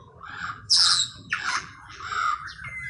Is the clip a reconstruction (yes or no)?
yes